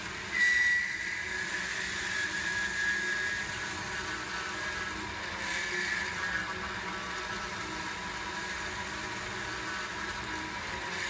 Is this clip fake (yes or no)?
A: no